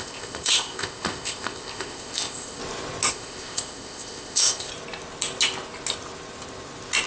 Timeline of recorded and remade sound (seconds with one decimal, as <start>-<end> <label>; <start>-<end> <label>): 0.0-2.6 remade; 2.6-3.1 recorded; 3.1-4.7 remade; 4.7-7.1 recorded